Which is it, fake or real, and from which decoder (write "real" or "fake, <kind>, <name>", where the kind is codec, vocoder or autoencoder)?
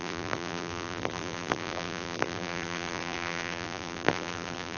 fake, vocoder, BigVGAN v2